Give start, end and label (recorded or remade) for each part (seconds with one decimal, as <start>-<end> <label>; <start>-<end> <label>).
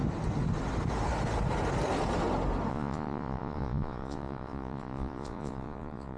0.0-2.7 recorded; 2.7-6.2 remade